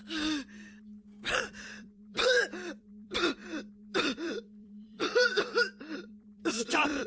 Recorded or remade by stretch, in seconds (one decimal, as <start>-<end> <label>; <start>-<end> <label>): 0.0-1.4 recorded; 1.4-7.1 remade

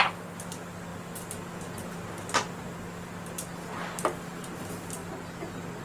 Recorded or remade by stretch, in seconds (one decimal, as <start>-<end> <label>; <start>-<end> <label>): 0.0-5.8 recorded

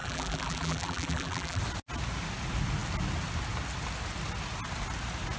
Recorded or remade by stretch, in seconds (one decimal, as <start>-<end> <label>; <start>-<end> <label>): 0.0-1.6 remade; 1.6-5.4 recorded

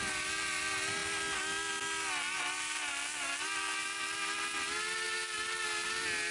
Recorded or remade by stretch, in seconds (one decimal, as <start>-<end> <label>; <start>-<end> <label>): 0.0-6.3 recorded

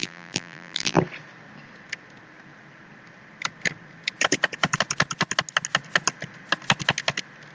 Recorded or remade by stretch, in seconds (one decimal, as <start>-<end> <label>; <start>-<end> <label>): 0.0-1.0 remade; 1.0-7.5 recorded

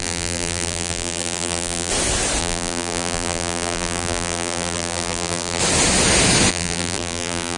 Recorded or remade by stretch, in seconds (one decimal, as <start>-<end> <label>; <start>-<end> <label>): 0.0-1.9 remade; 1.9-2.4 recorded; 2.4-5.6 remade; 5.6-6.5 recorded; 6.5-7.6 remade

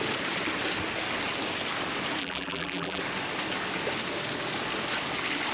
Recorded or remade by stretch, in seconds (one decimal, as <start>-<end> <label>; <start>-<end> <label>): 0.0-2.2 recorded; 2.2-3.0 remade; 3.0-5.5 recorded

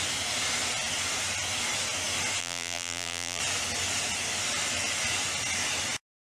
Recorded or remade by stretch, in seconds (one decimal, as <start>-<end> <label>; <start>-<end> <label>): 0.0-2.4 recorded; 2.4-3.4 remade; 3.4-6.3 recorded